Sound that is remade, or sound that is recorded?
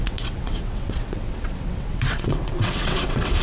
remade